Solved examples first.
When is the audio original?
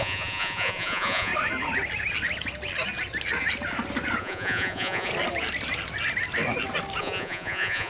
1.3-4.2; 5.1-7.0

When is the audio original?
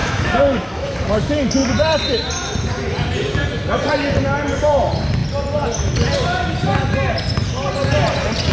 1.0-8.5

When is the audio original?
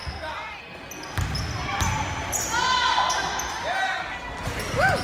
0.0-5.0